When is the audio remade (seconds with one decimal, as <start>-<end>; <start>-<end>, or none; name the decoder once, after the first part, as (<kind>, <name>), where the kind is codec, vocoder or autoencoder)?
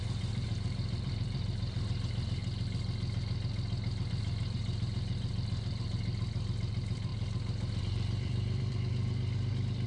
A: 0.0-2.4 (vocoder, BigVGAN v2); 4.1-7.1; 7.8-9.9